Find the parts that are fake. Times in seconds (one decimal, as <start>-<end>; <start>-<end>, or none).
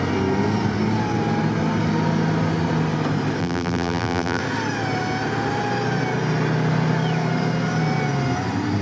3.4-4.4